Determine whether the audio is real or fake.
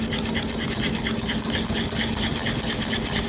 real